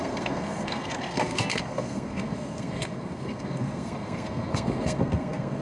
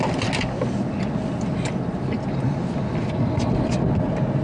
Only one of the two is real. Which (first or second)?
second